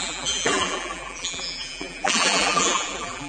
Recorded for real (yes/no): no